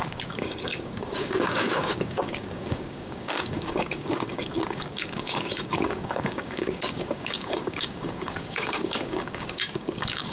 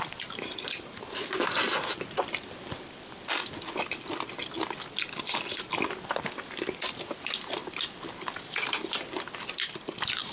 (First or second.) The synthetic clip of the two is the first